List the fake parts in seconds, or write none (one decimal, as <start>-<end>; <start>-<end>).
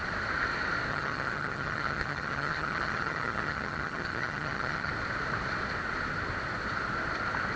0.9-4.9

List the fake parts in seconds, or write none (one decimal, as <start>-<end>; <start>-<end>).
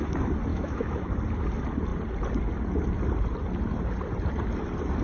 0.5-1.1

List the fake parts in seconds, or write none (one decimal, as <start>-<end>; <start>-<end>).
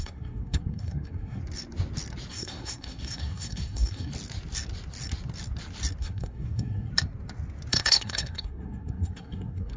0.0-1.4; 2.3-4.1; 6.0-6.9; 7.7-9.8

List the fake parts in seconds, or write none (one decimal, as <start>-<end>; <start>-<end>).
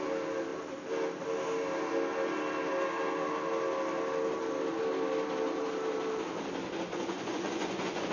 6.9-8.1